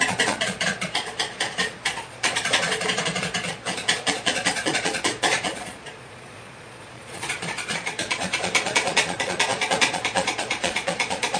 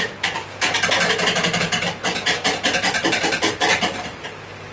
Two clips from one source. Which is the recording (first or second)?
second